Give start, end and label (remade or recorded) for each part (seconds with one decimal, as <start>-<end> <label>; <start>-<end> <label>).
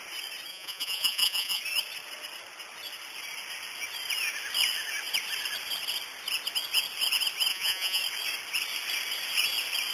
0.0-0.5 recorded; 0.5-1.6 remade; 1.6-7.5 recorded; 7.5-8.0 remade; 8.0-9.9 recorded